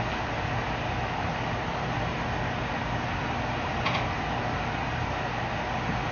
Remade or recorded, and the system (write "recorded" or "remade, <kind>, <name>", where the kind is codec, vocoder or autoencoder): recorded